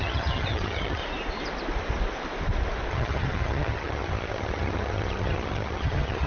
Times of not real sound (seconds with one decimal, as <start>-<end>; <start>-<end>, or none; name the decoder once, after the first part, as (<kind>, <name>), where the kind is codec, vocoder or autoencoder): 0.0-1.0 (vocoder, HiFi-GAN); 2.9-6.3